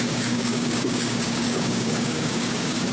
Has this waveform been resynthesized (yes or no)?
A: yes